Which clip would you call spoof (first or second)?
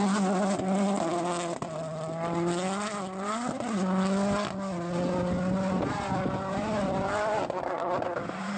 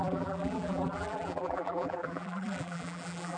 second